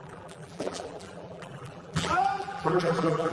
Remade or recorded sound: remade